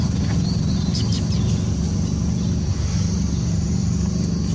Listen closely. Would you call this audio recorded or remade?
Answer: recorded